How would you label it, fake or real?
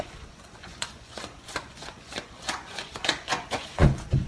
fake